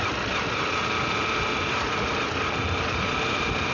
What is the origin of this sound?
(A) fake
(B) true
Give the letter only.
B